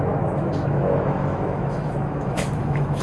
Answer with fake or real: fake